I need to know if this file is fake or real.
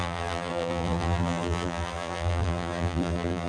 fake